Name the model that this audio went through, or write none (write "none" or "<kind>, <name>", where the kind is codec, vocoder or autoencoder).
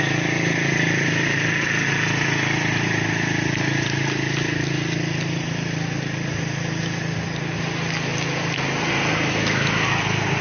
none